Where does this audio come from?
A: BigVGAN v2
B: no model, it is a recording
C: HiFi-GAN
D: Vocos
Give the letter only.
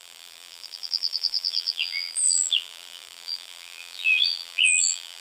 A